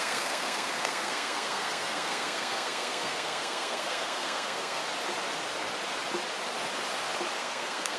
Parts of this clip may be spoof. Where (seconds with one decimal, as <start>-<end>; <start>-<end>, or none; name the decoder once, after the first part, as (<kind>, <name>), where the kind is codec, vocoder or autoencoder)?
0.0-4.8 (codec, SNAC); 7.4-8.0